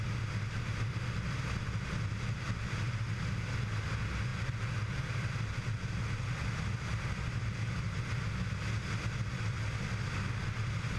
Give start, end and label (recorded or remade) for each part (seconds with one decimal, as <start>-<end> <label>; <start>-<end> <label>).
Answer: 0.0-11.0 recorded